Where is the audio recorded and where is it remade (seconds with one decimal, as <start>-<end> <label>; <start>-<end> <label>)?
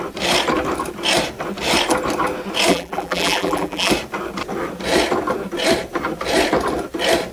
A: 0.0-2.7 recorded; 2.7-3.9 remade; 3.9-7.3 recorded